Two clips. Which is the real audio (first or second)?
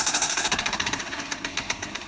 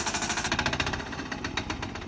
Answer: second